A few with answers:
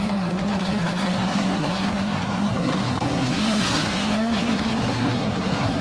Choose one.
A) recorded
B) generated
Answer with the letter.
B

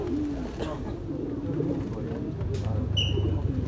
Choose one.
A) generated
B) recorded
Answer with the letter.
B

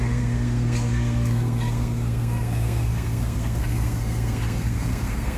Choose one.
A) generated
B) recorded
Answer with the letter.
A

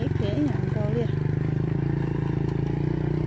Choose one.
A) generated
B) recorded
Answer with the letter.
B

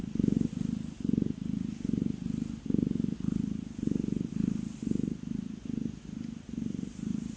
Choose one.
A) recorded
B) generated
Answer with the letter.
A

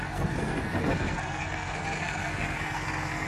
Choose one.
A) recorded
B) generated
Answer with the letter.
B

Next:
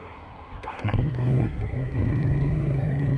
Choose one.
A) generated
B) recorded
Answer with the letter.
A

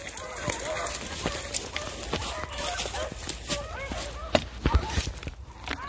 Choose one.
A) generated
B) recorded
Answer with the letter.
B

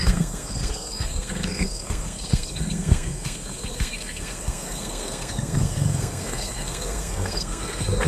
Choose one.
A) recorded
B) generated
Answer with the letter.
B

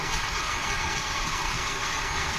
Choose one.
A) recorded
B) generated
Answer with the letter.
B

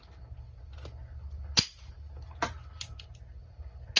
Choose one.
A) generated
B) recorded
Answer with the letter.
B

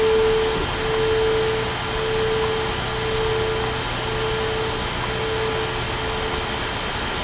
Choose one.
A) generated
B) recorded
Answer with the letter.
B